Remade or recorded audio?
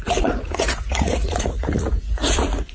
remade